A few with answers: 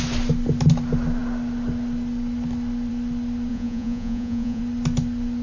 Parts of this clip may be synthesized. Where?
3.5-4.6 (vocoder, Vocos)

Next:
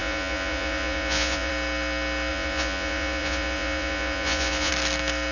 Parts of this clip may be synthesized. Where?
0.0-1.5 (vocoder, Vocos); 2.3-4.7

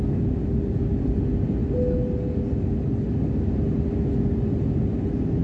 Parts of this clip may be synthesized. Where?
none

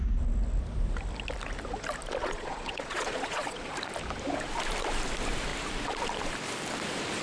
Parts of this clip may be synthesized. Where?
2.2-3.7 (vocoder, Vocos)

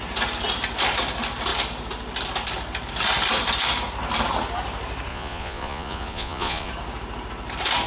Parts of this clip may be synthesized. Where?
5.1-6.7 (vocoder, Vocos)

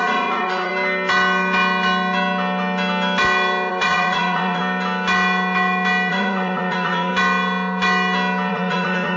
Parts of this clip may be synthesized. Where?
0.0-0.7 (vocoder, Vocos); 3.7-4.6; 6.1-7.1; 8.5-9.2

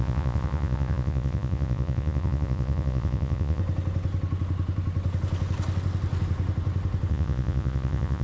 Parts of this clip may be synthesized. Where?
0.0-3.6 (vocoder, Vocos); 7.1-8.2

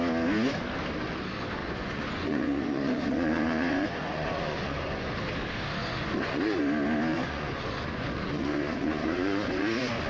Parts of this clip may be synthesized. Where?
1.6-5.2 (vocoder, Vocos); 5.8-6.6; 7.1-10.1